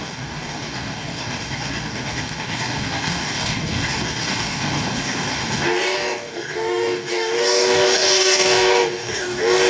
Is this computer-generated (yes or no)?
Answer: yes